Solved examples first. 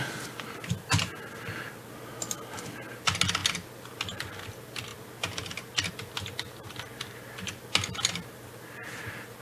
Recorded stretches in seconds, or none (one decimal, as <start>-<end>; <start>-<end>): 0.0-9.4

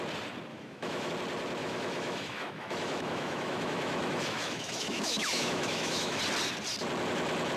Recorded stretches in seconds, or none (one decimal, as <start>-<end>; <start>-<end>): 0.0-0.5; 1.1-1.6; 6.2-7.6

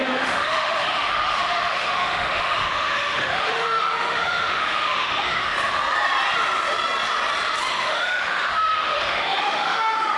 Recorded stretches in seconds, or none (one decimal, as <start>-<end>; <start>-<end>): 5.8-7.7

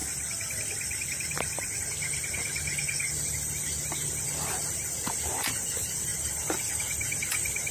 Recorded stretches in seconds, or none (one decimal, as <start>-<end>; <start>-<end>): 0.0-7.7

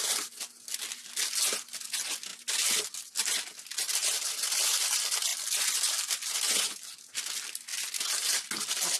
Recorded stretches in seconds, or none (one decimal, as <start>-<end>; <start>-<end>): 0.0-9.0

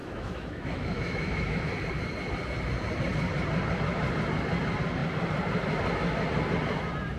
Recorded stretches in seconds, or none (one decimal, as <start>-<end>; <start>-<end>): 1.7-7.2